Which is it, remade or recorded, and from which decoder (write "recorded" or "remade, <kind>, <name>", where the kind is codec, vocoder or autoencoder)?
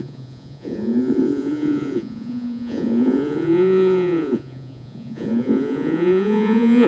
remade, vocoder, Vocos